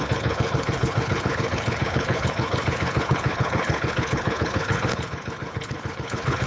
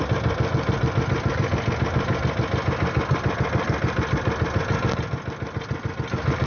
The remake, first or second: first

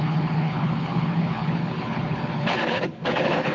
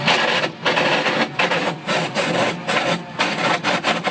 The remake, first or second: first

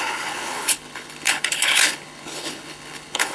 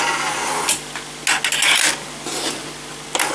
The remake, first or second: first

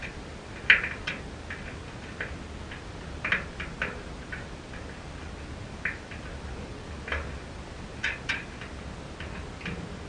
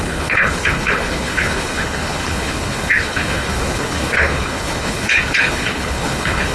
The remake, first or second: second